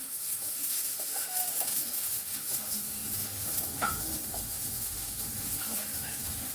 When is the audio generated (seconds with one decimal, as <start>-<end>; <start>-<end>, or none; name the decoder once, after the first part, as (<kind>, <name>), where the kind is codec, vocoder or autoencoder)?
0.0-6.5 (autoencoder, DAC-VAE)